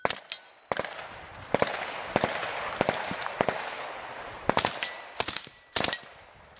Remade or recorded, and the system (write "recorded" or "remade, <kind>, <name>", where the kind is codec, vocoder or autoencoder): recorded